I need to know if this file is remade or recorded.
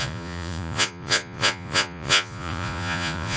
remade